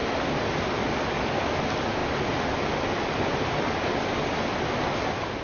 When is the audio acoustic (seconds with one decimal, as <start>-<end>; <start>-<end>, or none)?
0.0-5.4